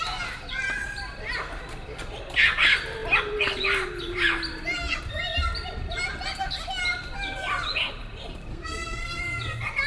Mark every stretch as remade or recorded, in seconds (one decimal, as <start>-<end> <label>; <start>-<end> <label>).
0.0-8.5 recorded; 8.5-9.2 remade; 9.2-9.9 recorded